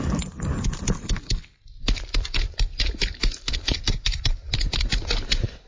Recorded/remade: recorded